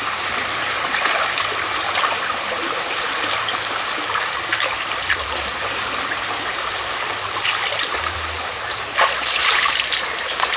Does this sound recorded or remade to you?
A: recorded